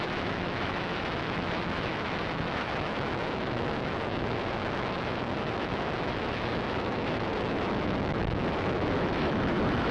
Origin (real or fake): fake